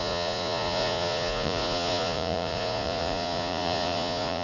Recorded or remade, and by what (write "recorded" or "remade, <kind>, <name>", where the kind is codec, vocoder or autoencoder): remade, vocoder, Vocos